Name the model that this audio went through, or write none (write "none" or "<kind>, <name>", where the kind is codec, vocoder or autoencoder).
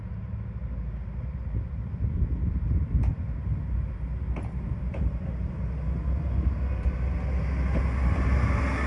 none